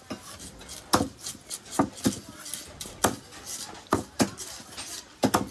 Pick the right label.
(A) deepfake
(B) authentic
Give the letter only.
B